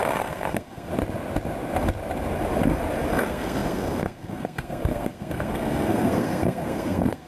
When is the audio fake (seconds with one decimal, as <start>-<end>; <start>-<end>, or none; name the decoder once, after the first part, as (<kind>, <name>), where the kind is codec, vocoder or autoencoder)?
0.0-0.9 (codec, SNAC); 3.2-7.3